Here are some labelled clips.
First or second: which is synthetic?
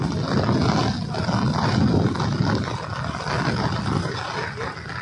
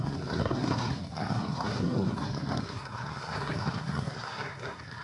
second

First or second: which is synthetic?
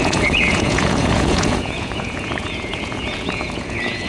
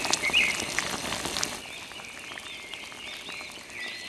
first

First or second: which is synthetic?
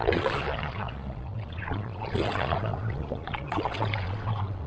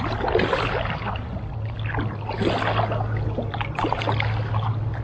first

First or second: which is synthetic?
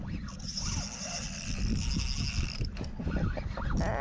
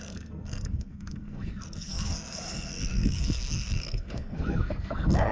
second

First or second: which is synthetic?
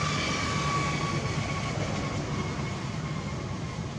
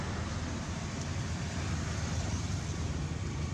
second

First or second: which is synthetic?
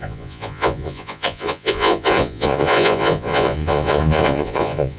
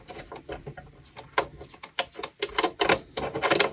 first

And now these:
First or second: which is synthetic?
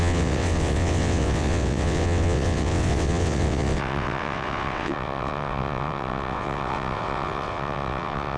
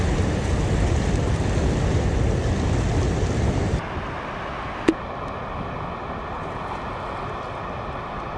first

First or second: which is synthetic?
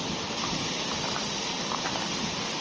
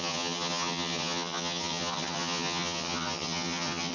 second